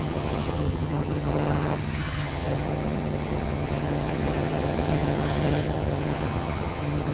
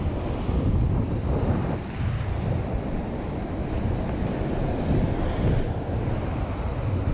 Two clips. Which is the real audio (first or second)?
second